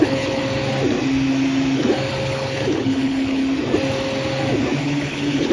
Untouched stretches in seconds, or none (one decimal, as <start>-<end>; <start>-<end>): 0.4-2.1; 3.4-4.8